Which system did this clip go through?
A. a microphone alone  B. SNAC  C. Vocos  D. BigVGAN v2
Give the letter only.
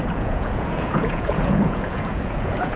C